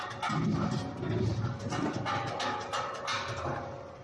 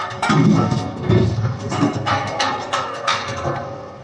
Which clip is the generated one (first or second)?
second